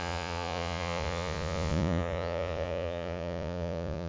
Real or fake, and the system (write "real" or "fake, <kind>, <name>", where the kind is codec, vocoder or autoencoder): fake, vocoder, Vocos